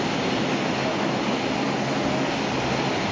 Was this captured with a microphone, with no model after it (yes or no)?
yes